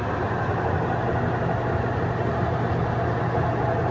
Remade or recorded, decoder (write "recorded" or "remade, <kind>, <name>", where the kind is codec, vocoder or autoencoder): recorded